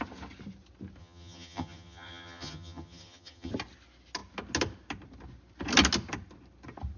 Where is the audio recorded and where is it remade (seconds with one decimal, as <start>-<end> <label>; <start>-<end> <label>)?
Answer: 0.0-1.0 recorded; 1.0-3.5 remade; 3.5-7.0 recorded